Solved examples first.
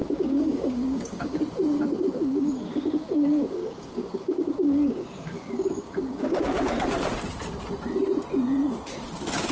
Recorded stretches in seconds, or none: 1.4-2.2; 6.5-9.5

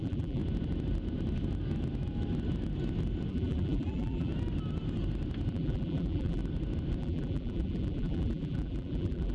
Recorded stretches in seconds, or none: 0.4-3.3; 4.3-5.5; 6.4-7.0

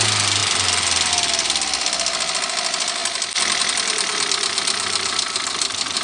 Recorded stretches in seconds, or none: 0.0-6.0

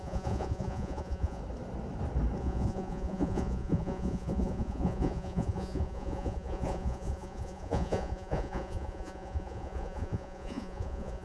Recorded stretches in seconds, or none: 1.4-2.4

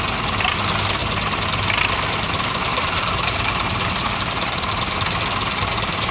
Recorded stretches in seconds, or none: 0.0-2.7; 4.7-6.1

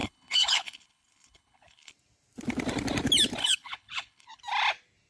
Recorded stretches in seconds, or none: 1.9-3.4; 4.4-5.1

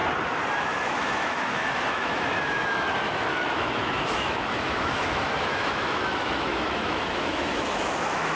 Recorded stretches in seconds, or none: 0.0-0.6